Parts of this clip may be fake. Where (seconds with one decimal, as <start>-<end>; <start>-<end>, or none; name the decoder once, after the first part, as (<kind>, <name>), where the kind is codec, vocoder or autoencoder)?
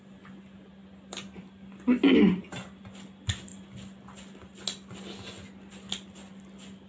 none